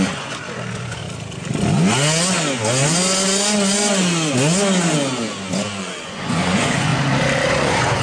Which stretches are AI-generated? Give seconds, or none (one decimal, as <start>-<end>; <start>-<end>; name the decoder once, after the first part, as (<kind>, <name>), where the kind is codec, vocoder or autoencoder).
0.0-1.0 (vocoder, Vocos); 5.8-6.9; 7.5-8.0